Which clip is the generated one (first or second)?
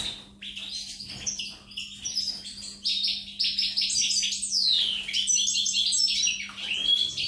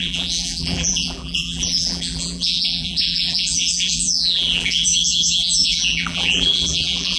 second